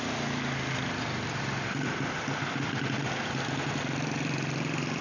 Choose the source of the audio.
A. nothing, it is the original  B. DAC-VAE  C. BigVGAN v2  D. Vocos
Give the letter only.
A